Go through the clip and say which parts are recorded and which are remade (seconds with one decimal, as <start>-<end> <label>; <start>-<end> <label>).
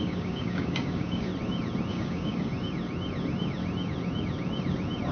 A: 0.0-1.3 remade; 1.3-1.9 recorded; 1.9-2.5 remade; 2.5-5.1 recorded